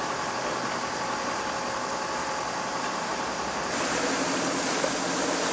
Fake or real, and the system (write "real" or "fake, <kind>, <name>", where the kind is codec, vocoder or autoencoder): real